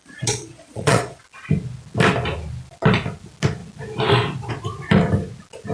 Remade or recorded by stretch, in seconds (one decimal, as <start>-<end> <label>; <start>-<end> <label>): 0.0-1.2 remade; 1.2-5.7 recorded